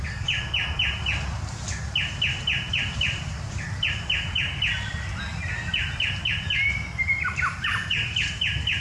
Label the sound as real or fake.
real